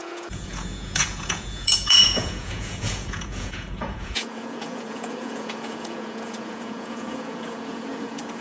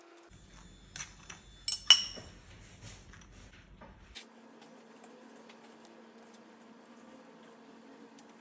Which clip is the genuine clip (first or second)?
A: second